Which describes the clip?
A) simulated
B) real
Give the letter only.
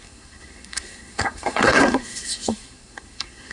A